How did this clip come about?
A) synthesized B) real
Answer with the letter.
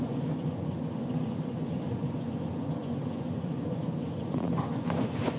A